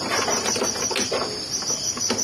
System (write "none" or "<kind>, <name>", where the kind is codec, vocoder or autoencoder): none